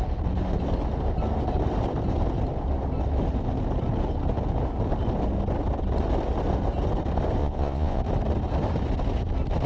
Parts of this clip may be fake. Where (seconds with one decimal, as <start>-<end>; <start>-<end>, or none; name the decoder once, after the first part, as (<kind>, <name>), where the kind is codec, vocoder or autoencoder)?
7.4-8.0 (vocoder, Vocos)